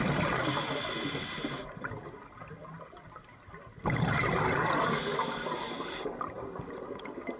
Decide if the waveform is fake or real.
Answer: real